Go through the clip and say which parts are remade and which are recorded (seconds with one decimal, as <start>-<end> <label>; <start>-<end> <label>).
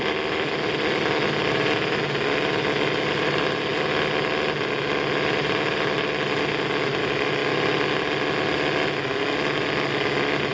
0.0-10.5 recorded